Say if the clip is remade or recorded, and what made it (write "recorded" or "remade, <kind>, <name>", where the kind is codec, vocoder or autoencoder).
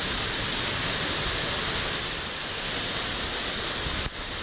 recorded